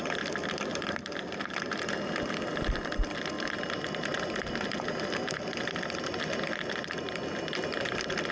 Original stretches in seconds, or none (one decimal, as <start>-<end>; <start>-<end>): 0.0-8.3